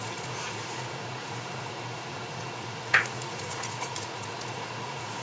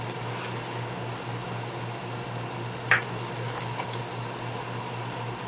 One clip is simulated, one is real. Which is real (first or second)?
second